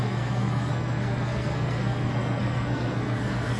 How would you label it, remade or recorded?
remade